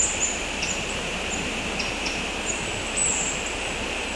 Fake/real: real